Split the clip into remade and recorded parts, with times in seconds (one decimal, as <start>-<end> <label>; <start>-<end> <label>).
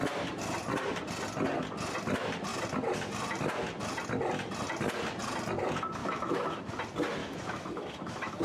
0.0-6.0 recorded; 6.0-6.7 remade; 6.7-7.2 recorded; 7.2-8.4 remade